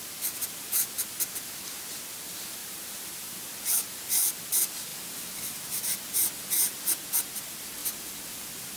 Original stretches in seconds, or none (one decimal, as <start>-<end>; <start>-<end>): 0.0-2.6; 3.5-8.8